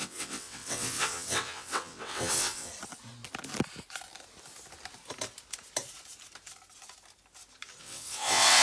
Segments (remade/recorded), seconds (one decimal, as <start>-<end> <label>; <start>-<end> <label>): 0.0-2.7 remade; 2.7-7.8 recorded; 7.8-8.6 remade